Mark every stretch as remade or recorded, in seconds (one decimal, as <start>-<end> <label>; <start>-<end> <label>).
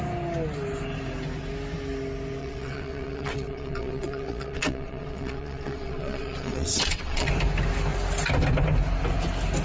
0.0-2.4 recorded; 2.4-7.3 remade; 7.3-9.6 recorded